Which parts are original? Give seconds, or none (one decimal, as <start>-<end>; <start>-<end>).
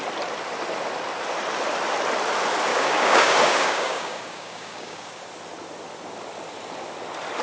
0.0-2.7; 5.2-7.4